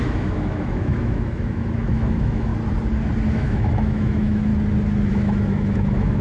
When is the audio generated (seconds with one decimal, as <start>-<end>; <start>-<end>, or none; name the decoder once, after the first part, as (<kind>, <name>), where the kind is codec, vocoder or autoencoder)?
0.0-2.5 (autoencoder, DAC-VAE); 3.3-4.5; 5.1-6.2